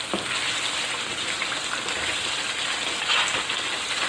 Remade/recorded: recorded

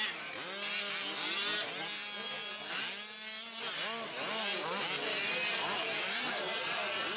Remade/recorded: recorded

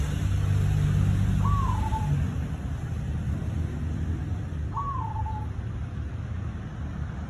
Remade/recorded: recorded